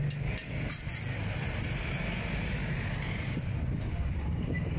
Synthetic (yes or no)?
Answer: no